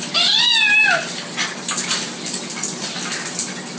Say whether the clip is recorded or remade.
recorded